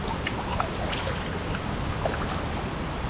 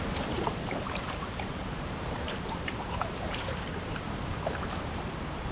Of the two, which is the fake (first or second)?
second